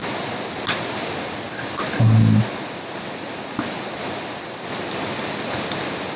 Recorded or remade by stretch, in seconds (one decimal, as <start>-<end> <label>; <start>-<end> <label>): 0.0-6.2 recorded